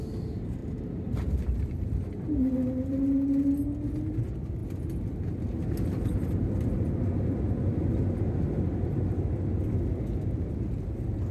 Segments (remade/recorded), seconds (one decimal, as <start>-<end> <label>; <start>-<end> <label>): 0.0-0.6 recorded; 0.6-1.9 remade; 1.9-11.3 recorded